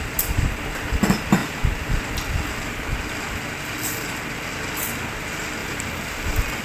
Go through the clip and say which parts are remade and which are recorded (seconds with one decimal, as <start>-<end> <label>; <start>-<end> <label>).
0.0-5.6 recorded; 5.6-6.6 remade